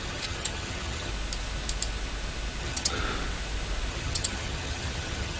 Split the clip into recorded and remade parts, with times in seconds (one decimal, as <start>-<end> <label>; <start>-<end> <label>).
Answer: 0.0-1.1 remade; 1.1-2.6 recorded; 2.6-3.0 remade; 3.0-3.9 recorded; 3.9-5.4 remade